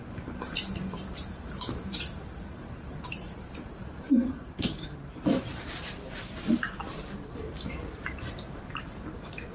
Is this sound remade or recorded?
remade